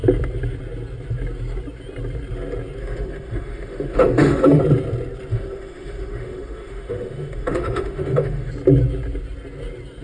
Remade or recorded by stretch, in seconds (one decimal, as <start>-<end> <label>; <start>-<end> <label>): 0.0-2.8 recorded; 2.8-4.6 remade; 4.6-5.3 recorded; 5.3-8.5 remade; 8.5-10.0 recorded